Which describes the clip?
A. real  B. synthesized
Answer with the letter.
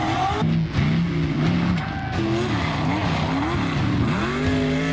A